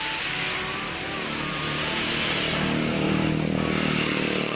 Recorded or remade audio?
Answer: recorded